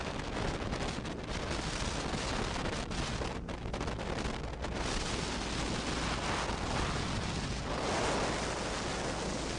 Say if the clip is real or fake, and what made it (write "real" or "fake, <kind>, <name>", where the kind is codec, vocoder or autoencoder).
real